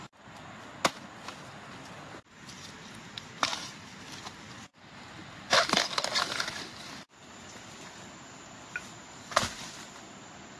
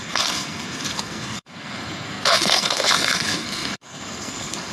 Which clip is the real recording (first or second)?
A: first